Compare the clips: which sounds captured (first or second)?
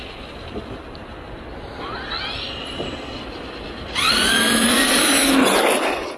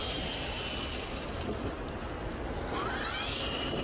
second